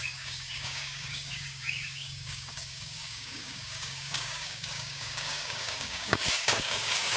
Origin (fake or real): fake